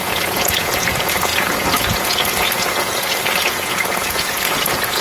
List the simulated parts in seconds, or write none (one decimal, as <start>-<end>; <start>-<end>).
0.0-5.0